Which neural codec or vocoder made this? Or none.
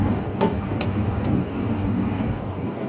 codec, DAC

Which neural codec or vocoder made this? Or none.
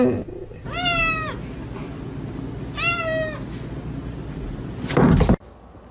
none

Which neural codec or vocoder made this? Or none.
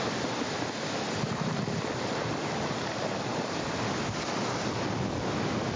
none